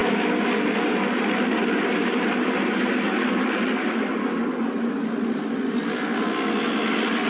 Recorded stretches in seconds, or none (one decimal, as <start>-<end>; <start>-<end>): 0.0-7.3